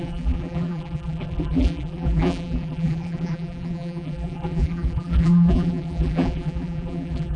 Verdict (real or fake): fake